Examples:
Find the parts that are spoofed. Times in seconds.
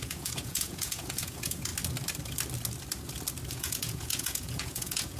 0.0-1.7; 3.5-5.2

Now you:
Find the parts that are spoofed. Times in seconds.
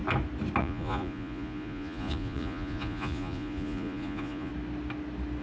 0.6-4.5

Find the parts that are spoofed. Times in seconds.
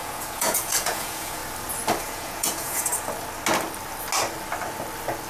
0.0-1.4; 2.0-2.9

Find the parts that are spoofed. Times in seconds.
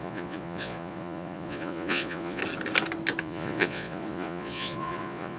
0.0-2.4; 3.2-5.4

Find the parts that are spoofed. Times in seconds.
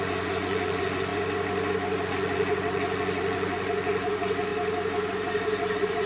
0.0-1.1; 2.0-4.5; 5.1-6.1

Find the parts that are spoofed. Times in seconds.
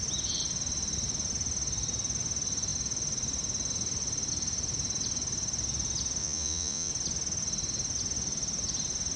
6.2-6.9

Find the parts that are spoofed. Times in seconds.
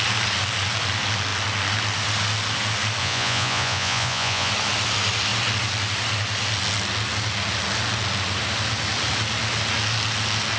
3.0-4.5